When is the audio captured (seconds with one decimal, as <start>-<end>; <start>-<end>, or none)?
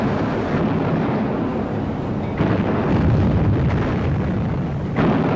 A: 0.0-5.4